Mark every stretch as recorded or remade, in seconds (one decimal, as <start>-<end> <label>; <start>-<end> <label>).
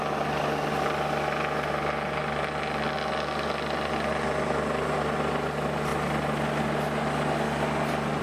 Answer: 0.0-8.2 recorded